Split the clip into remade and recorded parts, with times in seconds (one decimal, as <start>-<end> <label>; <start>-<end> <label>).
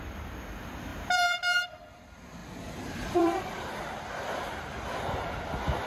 0.0-0.9 recorded; 0.9-1.7 remade; 1.7-2.4 recorded; 2.4-3.4 remade; 3.4-5.9 recorded